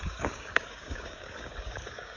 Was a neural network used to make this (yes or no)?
yes